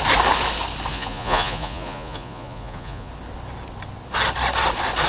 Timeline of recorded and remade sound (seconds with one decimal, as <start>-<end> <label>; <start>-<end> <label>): 0.0-0.9 recorded; 0.9-3.1 remade; 3.1-5.1 recorded